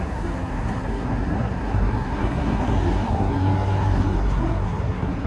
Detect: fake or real fake